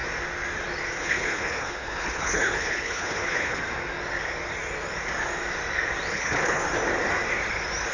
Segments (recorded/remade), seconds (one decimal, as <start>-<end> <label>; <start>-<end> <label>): 0.0-1.0 recorded; 1.0-3.6 remade; 3.6-6.1 recorded; 6.1-6.6 remade; 6.6-7.9 recorded